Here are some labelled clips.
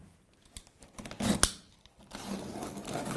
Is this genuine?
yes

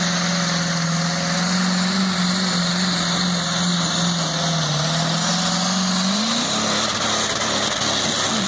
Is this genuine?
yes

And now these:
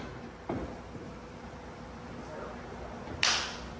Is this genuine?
yes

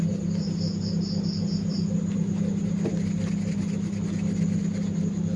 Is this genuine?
yes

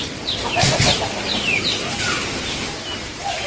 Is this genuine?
yes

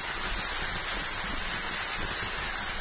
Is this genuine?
yes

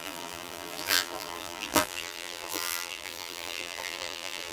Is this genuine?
no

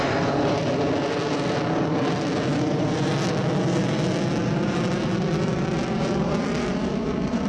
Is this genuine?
no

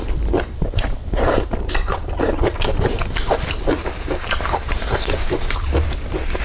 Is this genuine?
no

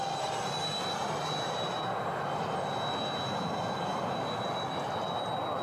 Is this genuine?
yes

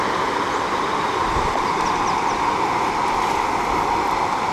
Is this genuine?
yes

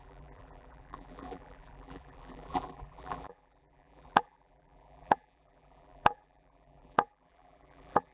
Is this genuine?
no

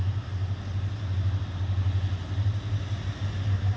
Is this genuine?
yes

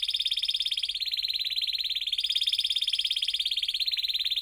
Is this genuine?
no